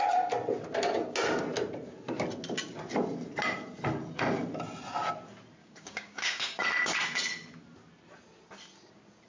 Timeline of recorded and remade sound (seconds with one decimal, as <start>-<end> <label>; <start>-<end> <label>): 0.0-5.6 recorded; 5.6-6.6 remade; 6.6-9.3 recorded